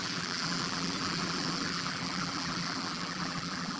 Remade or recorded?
remade